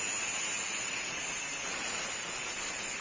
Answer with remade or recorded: recorded